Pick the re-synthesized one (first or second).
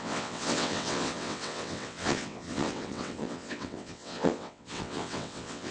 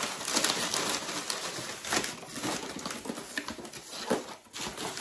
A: first